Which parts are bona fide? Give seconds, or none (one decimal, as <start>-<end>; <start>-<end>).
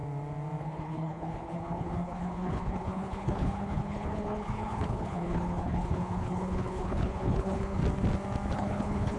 0.0-0.6; 7.8-8.5